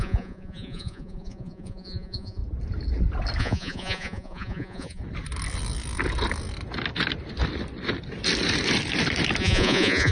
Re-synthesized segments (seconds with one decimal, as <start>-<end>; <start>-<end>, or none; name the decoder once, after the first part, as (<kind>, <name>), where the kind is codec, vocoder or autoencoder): 0.0-2.4 (vocoder, Vocos); 3.4-5.0; 9.4-10.1